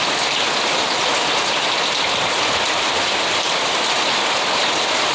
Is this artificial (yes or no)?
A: no